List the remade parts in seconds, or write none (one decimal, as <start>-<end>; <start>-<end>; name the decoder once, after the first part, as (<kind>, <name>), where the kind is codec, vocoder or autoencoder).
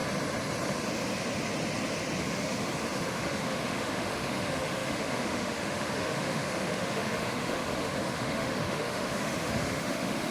2.2-10.3 (autoencoder, DAC-VAE)